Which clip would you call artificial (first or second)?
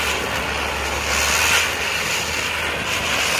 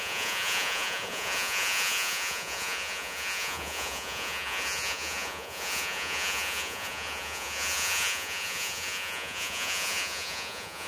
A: second